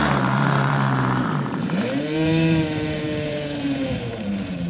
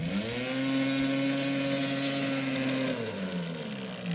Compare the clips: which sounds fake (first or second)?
first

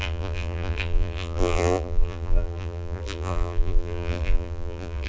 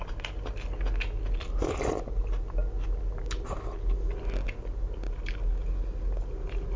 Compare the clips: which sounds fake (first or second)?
first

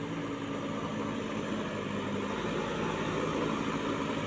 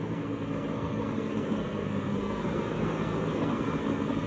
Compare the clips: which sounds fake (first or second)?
second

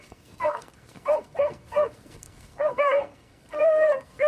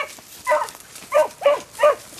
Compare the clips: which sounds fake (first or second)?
first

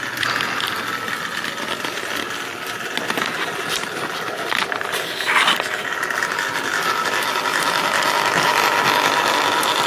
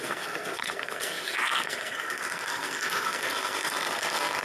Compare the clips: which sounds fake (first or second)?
second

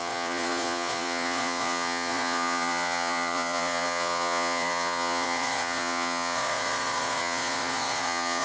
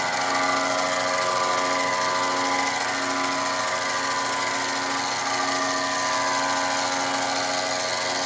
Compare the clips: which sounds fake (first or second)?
first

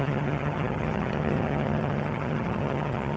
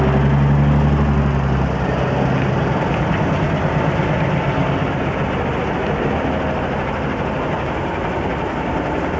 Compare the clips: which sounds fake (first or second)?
first